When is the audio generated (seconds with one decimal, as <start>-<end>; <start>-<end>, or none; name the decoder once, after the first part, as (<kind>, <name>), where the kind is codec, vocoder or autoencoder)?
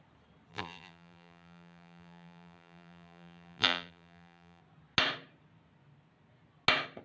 0.5-4.6 (vocoder, BigVGAN v2)